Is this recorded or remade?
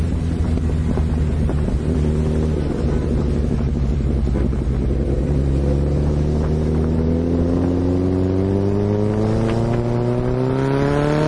recorded